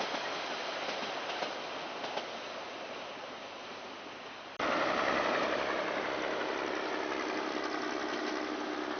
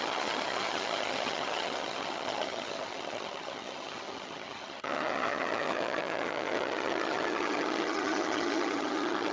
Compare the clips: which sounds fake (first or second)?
second